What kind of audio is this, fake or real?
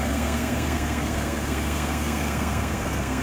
fake